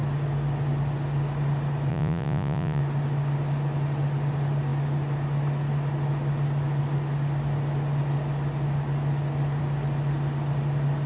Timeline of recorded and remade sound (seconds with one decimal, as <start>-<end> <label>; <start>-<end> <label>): 0.0-1.9 recorded; 1.9-2.8 remade; 2.8-11.1 recorded